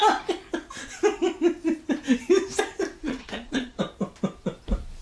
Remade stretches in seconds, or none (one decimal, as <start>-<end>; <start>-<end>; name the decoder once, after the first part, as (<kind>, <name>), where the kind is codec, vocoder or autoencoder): 3.0-3.8 (vocoder, Vocos)